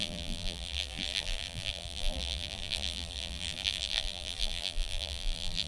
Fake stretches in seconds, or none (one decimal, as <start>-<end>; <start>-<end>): 0.0-5.7